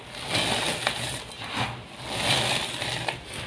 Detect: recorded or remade recorded